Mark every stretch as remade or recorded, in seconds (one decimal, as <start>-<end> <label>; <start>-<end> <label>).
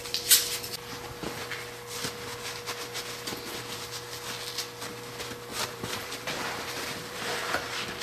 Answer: 0.0-5.5 recorded; 5.5-7.5 remade; 7.5-8.0 recorded